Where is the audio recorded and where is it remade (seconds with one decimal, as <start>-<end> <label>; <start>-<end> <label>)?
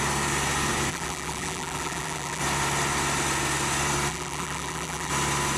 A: 0.0-0.9 recorded; 0.9-2.4 remade; 2.4-4.1 recorded; 4.1-5.1 remade; 5.1-5.6 recorded